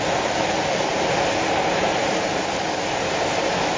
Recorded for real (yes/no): yes